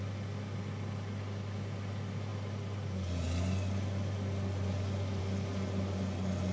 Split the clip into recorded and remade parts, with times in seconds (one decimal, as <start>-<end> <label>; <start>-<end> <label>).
0.0-6.5 recorded